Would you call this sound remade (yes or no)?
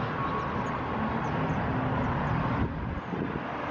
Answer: no